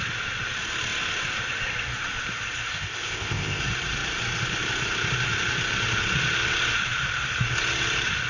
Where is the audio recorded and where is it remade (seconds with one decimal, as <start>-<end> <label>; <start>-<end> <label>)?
0.0-2.7 recorded; 2.7-3.6 remade; 3.6-8.3 recorded